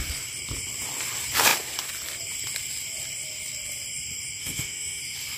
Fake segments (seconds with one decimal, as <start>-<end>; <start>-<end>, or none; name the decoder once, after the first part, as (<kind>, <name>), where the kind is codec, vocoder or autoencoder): 4.4-5.0 (autoencoder, DAC-VAE)